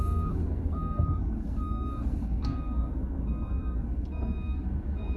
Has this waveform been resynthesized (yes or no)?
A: yes